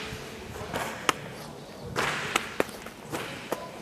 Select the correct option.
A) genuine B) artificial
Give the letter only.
A